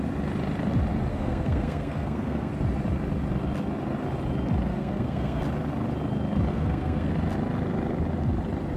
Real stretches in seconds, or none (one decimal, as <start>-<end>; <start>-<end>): 0.0-1.1; 2.5-4.7; 5.4-6.5; 7.1-8.8